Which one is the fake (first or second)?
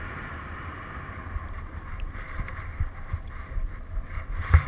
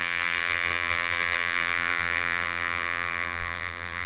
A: second